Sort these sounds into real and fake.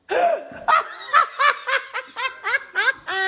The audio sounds real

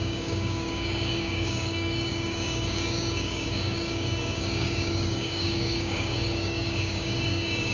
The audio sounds fake